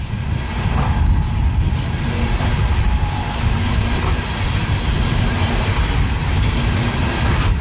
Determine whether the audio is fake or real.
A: real